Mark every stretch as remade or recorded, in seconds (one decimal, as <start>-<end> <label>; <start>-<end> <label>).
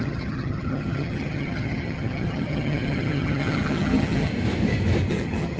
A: 0.0-4.3 remade; 4.3-5.1 recorded; 5.1-5.6 remade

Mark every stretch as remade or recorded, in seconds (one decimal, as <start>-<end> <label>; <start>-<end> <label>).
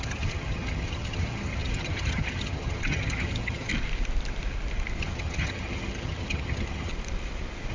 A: 0.0-3.7 remade; 3.7-5.0 recorded; 5.0-6.9 remade; 6.9-7.7 recorded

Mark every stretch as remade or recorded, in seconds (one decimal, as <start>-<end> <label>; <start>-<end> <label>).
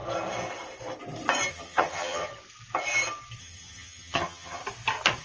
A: 0.0-1.5 recorded; 1.5-2.3 remade; 2.3-3.4 recorded; 3.4-4.6 remade; 4.6-5.2 recorded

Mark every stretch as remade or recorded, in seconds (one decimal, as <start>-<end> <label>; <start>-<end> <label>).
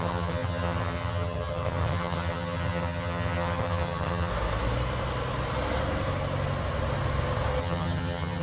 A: 0.0-4.3 remade; 4.3-7.6 recorded; 7.6-8.4 remade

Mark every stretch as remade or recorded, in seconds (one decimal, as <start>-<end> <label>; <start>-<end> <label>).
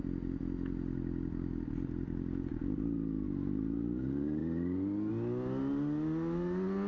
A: 0.0-6.9 recorded